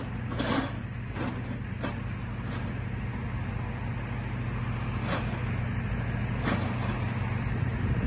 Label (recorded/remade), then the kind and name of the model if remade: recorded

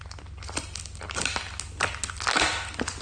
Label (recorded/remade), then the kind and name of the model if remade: recorded